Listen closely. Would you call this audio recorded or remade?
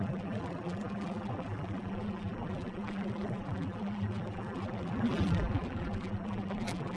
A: remade